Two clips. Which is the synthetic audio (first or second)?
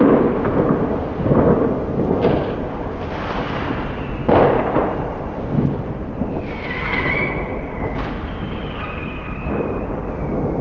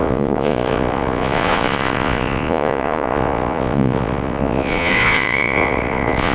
second